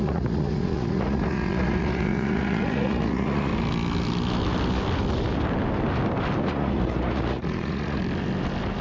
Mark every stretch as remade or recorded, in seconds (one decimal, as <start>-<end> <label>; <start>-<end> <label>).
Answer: 0.0-3.5 remade; 3.5-6.4 recorded; 6.4-8.0 remade; 8.0-8.8 recorded